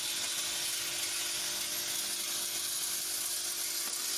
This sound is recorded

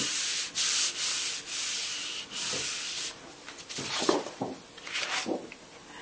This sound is recorded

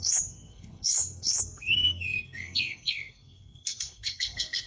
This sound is remade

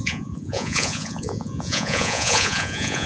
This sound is remade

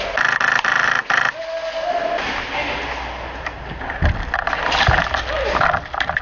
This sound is recorded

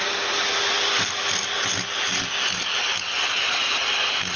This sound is remade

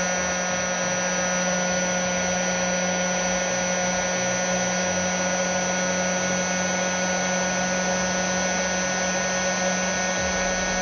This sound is recorded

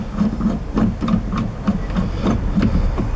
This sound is recorded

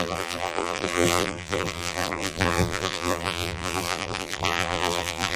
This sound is remade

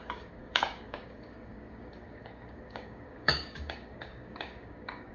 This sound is remade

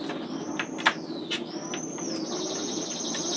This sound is recorded